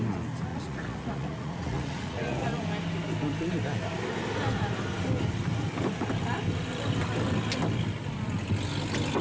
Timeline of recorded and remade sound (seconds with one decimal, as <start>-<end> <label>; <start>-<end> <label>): 0.0-0.5 recorded; 0.5-2.6 remade; 2.6-9.2 recorded